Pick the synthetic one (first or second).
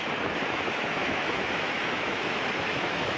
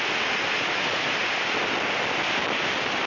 first